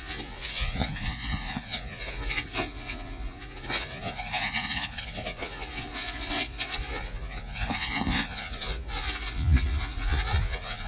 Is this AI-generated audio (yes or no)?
yes